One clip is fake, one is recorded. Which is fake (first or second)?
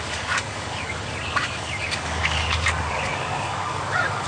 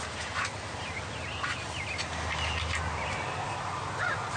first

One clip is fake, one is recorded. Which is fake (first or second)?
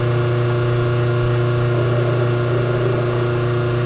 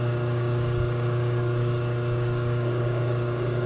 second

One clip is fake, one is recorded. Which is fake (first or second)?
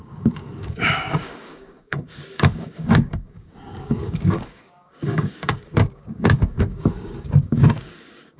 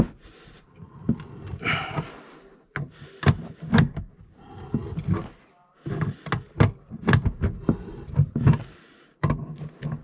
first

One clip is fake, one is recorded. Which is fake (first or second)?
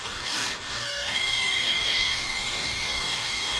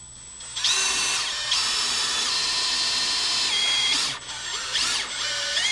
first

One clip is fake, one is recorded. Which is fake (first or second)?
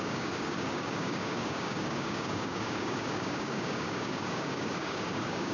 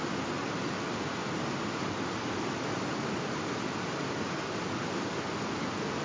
first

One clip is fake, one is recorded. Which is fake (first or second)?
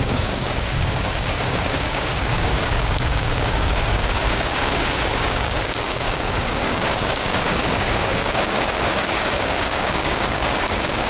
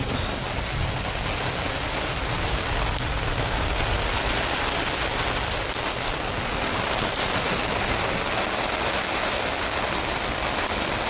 first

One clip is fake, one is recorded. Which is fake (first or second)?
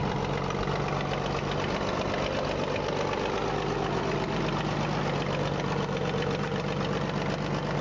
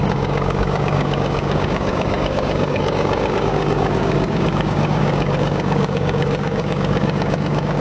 second